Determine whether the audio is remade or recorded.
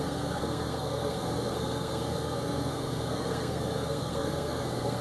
remade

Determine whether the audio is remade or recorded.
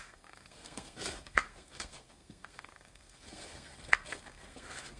remade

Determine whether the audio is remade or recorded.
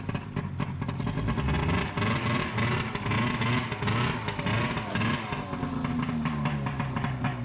recorded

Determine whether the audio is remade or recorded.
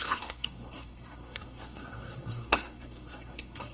remade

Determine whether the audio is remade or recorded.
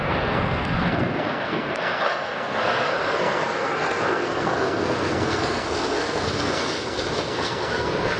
remade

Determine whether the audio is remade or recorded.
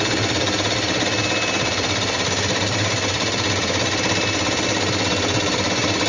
recorded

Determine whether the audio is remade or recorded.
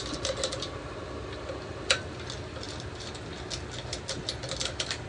recorded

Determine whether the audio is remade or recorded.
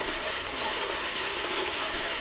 remade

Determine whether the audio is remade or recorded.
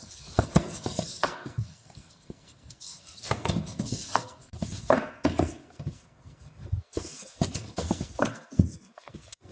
remade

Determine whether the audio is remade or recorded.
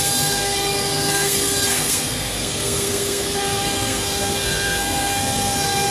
remade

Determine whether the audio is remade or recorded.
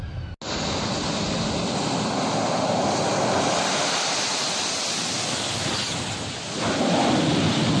recorded